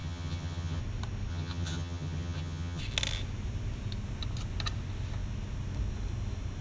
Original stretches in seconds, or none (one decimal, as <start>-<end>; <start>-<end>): 0.8-1.3; 2.8-6.6